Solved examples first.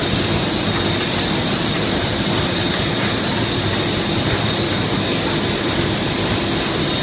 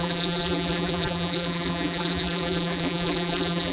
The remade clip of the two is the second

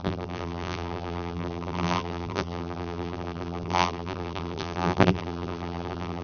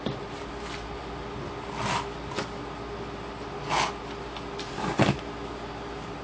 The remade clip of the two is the first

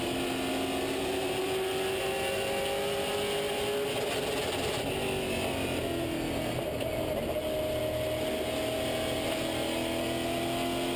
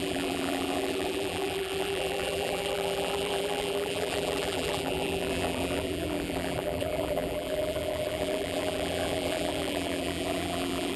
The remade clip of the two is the second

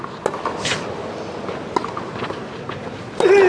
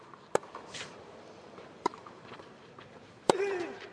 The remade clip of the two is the second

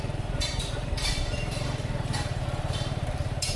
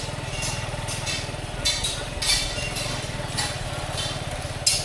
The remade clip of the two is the first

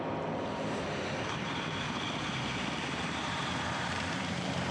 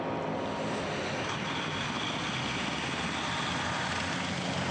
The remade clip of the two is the first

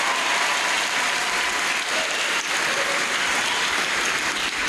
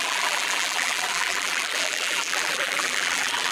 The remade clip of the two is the second